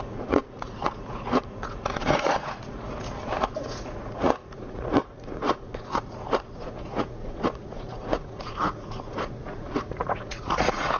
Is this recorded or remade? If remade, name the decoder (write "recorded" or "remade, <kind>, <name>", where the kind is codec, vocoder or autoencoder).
remade, vocoder, Vocos